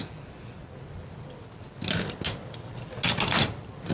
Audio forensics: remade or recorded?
recorded